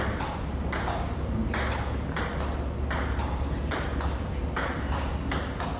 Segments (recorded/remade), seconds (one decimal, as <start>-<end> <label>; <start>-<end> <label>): 0.0-3.2 recorded; 3.2-4.1 remade; 4.1-4.6 recorded; 4.6-5.1 remade; 5.1-5.8 recorded